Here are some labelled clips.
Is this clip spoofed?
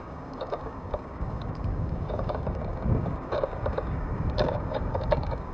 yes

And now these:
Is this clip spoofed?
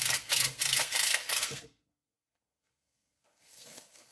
yes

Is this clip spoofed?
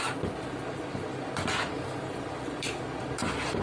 no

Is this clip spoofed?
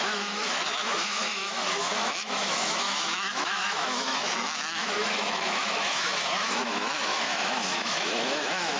yes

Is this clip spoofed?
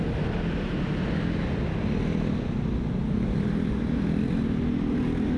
no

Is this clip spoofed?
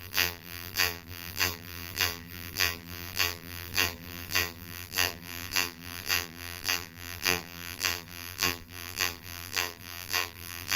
yes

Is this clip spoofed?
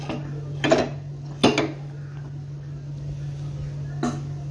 no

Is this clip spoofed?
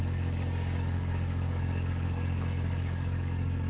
yes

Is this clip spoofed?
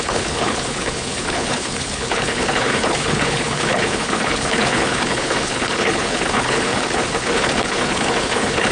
yes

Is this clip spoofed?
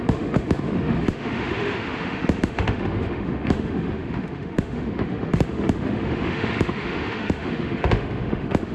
yes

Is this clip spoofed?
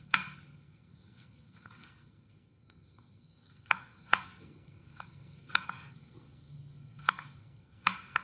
yes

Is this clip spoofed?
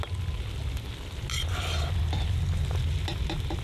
no